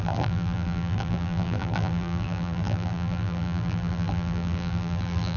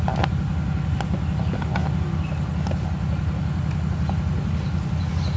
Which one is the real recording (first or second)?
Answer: second